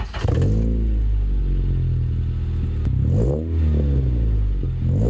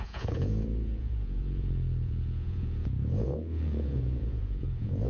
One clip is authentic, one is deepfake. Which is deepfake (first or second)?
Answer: second